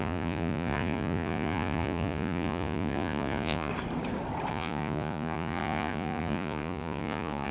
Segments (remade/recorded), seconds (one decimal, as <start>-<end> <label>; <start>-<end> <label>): 0.0-3.7 remade; 3.7-4.5 recorded; 4.5-7.5 remade